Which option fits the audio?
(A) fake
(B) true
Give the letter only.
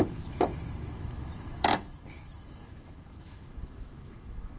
A